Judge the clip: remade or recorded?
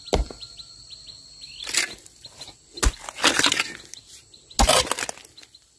recorded